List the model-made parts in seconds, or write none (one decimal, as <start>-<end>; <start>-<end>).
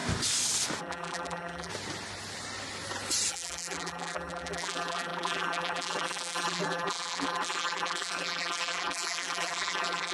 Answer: 0.8-1.7; 3.3-10.1